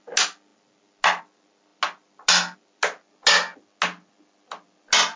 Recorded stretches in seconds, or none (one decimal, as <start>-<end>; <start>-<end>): 0.0-5.2